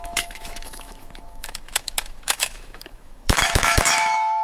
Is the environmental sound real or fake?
fake